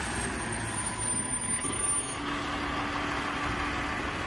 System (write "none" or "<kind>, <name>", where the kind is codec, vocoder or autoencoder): none